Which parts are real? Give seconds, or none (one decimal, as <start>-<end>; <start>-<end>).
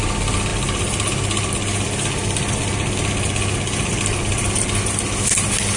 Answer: 0.0-5.8